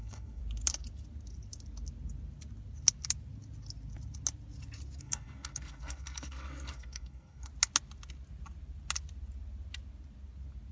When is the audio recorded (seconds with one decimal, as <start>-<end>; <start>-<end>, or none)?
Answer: 0.4-5.0; 7.5-10.7